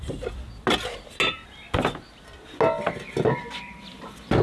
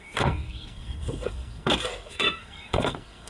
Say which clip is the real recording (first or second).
first